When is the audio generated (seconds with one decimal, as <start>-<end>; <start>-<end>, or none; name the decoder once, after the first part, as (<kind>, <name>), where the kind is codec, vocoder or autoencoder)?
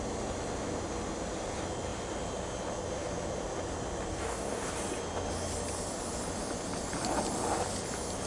4.1-4.7 (codec, DAC)